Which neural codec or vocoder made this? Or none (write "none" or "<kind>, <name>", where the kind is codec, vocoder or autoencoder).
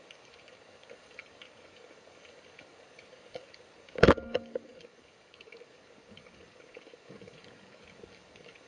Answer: codec, DAC